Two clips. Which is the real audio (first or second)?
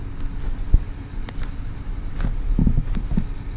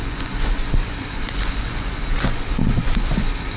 first